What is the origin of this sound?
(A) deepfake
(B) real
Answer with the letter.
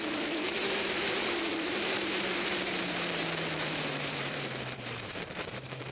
A